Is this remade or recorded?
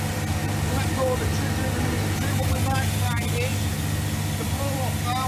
recorded